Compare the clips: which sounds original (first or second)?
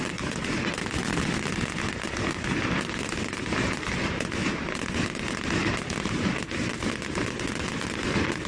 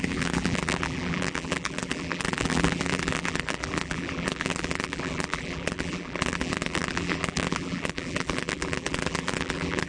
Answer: first